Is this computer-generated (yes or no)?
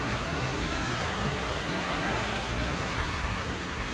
yes